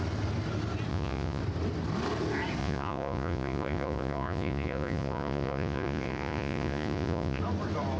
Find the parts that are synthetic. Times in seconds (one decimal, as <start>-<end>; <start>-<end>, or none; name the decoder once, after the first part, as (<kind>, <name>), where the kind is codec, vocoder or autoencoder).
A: 0.9-1.4 (vocoder, Vocos); 2.6-7.4